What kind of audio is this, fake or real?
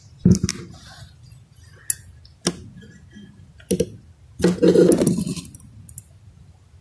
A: real